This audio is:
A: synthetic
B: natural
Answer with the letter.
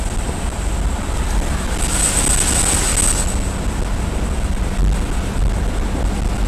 B